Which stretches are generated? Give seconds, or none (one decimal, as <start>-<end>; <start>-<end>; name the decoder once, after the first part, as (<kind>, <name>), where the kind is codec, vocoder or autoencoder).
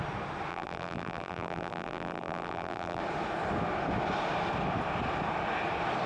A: 0.5-3.0 (vocoder, BigVGAN v2)